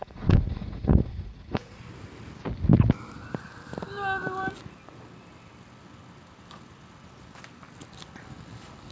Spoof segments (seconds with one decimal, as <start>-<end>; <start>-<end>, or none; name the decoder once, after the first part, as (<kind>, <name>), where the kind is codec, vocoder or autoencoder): 0.0-1.8 (vocoder, Vocos)